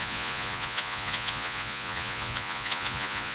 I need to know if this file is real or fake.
fake